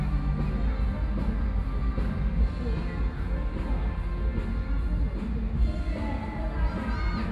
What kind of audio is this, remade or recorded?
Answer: recorded